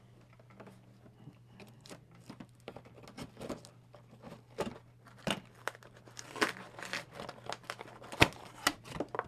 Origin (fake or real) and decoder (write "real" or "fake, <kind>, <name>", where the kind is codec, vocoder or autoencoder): real